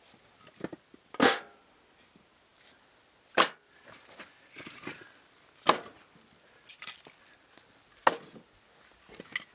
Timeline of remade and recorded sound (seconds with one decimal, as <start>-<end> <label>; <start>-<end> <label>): 0.0-9.5 recorded

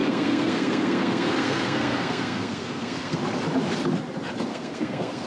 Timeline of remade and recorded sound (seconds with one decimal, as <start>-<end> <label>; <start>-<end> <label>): 0.0-3.2 remade; 3.2-4.5 recorded; 4.5-5.3 remade

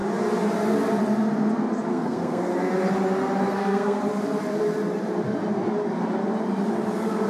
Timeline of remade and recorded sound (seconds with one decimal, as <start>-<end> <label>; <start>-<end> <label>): 0.0-1.9 recorded; 1.9-2.5 remade; 2.5-3.4 recorded; 3.4-4.0 remade; 4.0-7.3 recorded

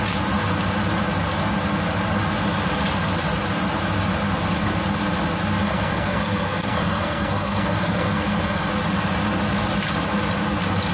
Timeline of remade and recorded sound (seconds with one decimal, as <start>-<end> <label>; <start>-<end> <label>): 0.0-5.6 recorded; 5.6-8.7 remade; 8.7-10.9 recorded